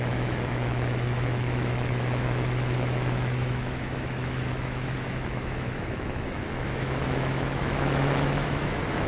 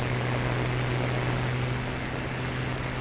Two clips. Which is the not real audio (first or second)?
first